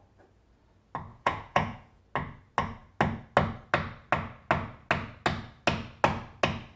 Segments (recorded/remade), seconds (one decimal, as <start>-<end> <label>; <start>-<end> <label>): 0.0-1.1 recorded; 1.1-2.0 remade; 2.0-6.8 recorded